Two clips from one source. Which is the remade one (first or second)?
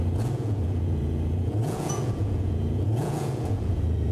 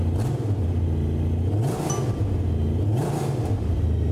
first